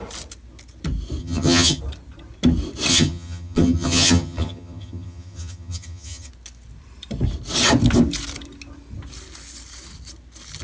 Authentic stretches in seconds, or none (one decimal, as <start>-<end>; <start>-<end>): 0.0-1.2; 1.8-2.9; 6.3-10.6